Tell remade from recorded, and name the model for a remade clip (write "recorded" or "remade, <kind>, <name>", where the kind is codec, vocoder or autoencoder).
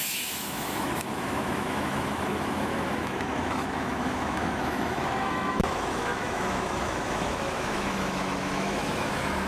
remade, autoencoder, DAC-VAE